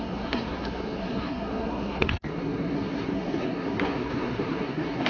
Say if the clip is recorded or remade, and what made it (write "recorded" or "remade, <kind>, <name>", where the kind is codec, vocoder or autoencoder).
remade, codec, SNAC